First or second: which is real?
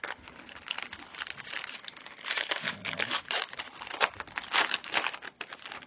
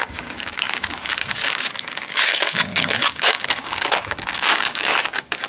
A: first